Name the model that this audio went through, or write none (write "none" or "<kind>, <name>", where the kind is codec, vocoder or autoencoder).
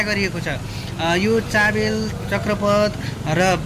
none